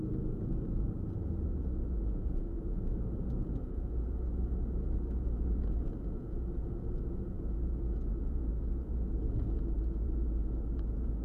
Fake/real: fake